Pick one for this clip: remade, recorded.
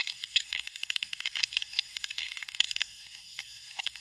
remade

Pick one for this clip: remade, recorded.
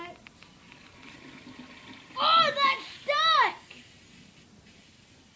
recorded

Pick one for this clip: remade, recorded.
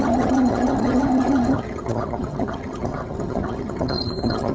remade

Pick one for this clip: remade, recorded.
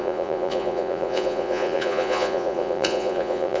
remade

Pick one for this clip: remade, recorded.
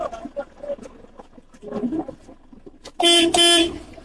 recorded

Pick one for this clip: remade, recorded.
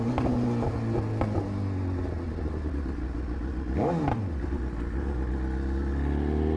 recorded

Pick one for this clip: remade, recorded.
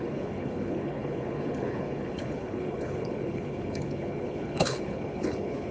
remade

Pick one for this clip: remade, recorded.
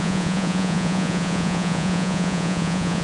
remade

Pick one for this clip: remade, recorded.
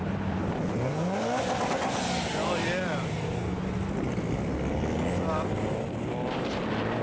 recorded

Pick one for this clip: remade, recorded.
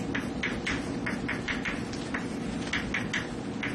recorded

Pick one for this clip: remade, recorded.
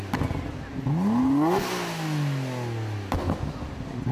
recorded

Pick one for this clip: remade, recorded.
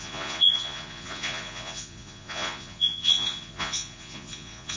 remade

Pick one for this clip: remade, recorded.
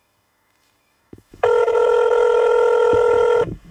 remade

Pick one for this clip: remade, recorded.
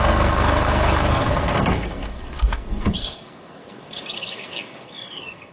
remade